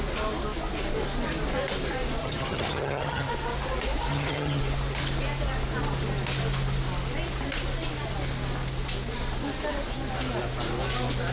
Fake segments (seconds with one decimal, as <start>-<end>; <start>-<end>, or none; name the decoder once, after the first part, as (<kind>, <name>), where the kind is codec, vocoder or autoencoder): 2.2-3.3 (vocoder, HiFi-GAN); 4.1-4.6